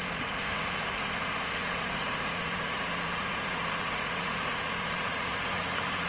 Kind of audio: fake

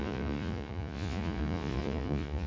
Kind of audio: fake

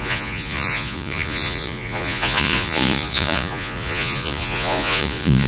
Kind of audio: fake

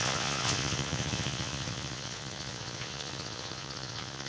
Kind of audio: fake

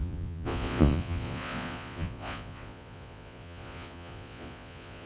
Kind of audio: fake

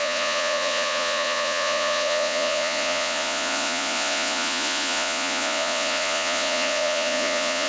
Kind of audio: fake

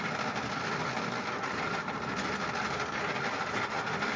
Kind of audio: real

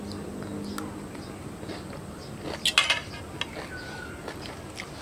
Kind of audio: real